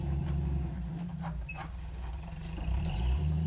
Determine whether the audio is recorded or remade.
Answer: remade